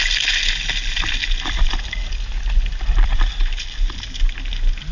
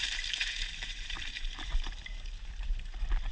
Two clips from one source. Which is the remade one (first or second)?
second